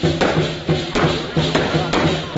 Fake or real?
real